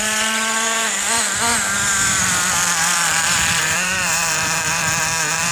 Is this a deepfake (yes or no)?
yes